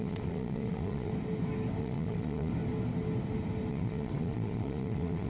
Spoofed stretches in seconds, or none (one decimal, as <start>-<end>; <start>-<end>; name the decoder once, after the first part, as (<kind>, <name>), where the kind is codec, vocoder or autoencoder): 0.0-1.1 (vocoder, Vocos); 1.8-2.5; 3.7-5.3